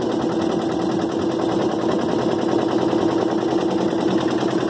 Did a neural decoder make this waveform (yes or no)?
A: no